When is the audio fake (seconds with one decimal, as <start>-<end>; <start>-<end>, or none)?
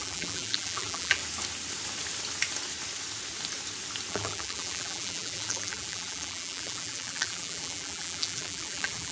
0.0-1.2; 4.1-9.1